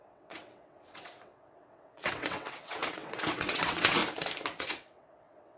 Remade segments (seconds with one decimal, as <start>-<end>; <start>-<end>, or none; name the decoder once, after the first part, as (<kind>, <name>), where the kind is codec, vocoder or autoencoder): 0.0-4.0 (vocoder, WaveNeXt); 4.6-5.6